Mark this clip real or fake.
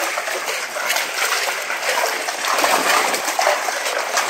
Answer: real